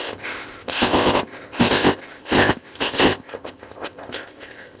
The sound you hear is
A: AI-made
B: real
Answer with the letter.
A